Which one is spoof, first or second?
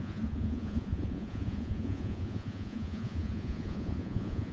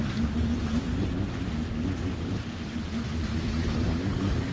first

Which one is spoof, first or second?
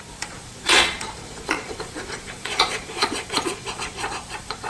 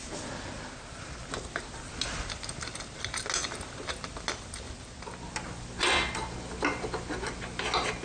first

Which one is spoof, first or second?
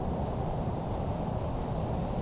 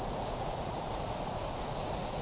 second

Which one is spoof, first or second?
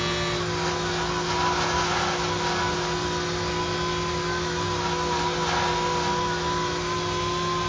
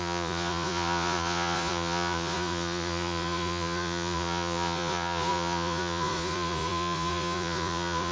second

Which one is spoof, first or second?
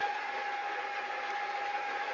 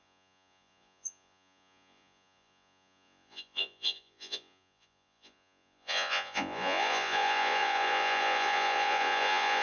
second